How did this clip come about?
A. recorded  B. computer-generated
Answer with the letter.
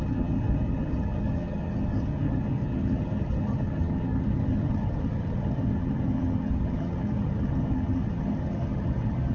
B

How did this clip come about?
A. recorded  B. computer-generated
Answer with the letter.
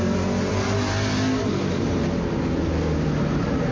A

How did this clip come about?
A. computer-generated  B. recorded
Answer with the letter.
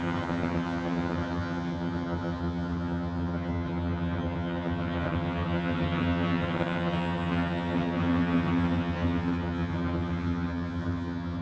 A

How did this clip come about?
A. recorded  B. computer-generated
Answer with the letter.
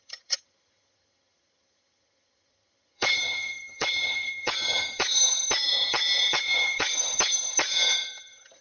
B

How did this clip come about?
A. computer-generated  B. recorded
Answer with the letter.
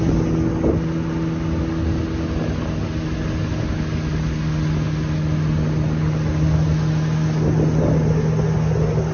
B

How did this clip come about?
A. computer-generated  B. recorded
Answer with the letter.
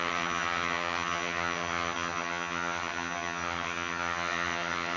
A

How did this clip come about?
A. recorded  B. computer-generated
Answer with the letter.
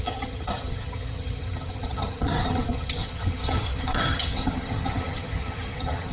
B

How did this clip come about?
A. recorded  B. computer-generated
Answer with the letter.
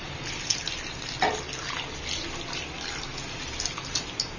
A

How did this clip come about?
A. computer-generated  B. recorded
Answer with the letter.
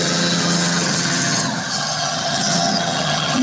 A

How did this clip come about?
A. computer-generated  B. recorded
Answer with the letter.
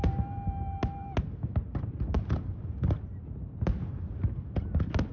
B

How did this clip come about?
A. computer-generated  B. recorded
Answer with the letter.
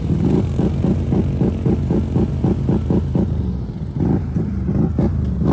B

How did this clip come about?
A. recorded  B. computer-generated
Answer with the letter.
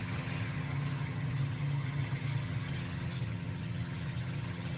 B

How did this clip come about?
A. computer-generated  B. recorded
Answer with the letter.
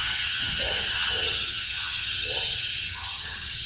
A